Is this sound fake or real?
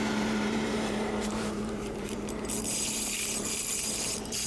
fake